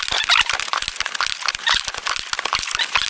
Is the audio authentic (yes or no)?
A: yes